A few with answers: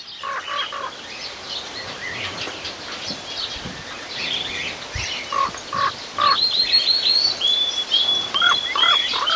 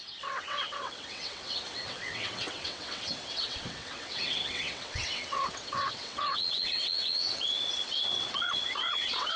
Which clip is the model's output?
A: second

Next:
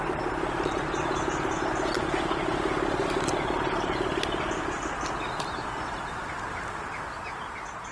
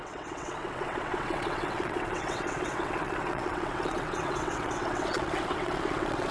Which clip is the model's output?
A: second